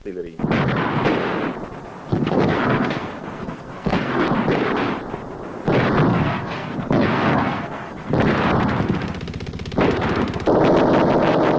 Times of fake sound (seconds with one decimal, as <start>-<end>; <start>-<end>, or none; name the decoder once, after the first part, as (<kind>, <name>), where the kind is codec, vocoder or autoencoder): 2.1-4.3 (codec, SNAC); 6.1-8.1